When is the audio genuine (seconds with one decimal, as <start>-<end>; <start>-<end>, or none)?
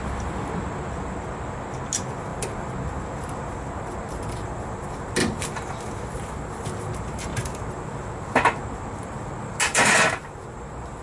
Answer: 0.0-11.0